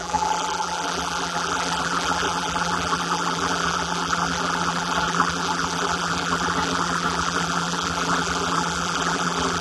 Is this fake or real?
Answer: fake